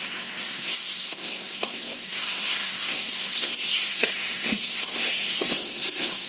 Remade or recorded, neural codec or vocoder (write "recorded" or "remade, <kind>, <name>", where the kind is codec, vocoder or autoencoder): remade, codec, SNAC